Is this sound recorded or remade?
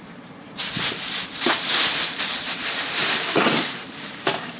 remade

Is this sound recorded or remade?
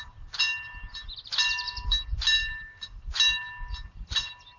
recorded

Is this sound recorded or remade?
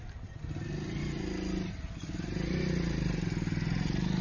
recorded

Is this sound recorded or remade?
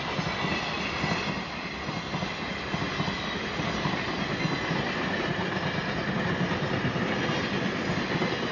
recorded